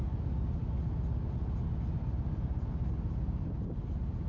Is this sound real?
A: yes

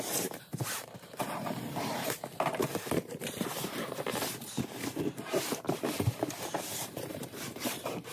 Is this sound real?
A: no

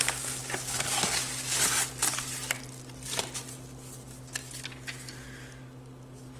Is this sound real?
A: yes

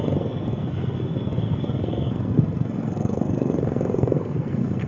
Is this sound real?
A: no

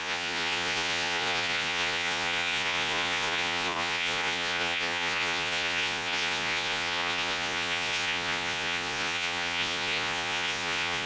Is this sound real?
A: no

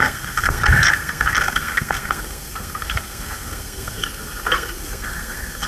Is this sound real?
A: no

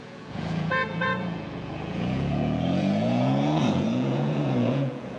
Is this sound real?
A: no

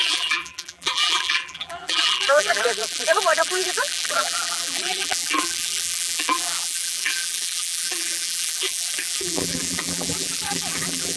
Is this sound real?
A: no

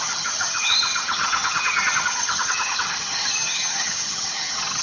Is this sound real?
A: no